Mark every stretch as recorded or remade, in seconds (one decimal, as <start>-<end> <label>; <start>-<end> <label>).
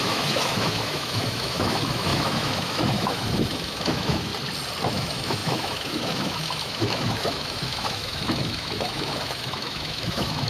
0.0-4.3 remade; 4.3-4.9 recorded; 4.9-10.5 remade